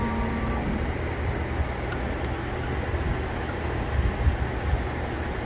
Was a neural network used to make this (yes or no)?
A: no